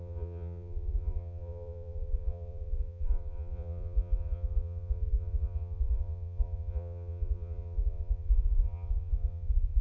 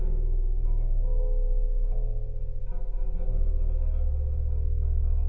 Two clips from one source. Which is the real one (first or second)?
second